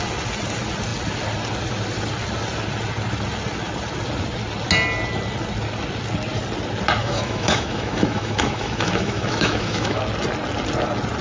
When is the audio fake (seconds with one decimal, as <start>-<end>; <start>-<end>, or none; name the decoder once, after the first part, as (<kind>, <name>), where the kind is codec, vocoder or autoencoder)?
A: 7.0-10.0 (autoencoder, DAC-VAE)